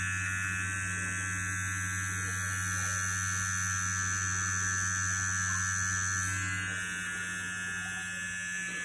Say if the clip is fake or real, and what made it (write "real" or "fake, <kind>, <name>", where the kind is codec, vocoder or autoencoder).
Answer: real